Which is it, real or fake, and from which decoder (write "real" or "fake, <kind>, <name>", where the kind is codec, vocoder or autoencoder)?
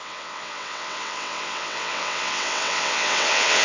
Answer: fake, vocoder, WaveNeXt